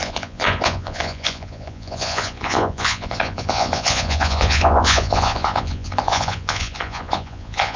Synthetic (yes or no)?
yes